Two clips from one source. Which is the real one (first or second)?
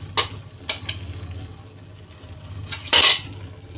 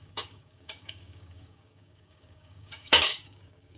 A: first